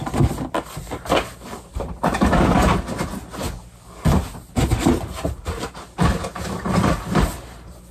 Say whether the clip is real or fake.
real